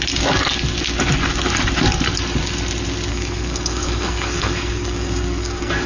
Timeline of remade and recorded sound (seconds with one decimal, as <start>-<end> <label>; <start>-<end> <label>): 0.0-3.1 recorded; 3.1-5.9 remade